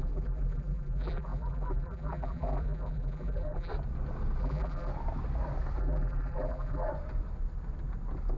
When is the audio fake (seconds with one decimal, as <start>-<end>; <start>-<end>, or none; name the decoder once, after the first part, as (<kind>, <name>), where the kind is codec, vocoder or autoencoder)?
0.0-3.7 (vocoder, BigVGAN v2); 4.4-4.9; 5.8-6.9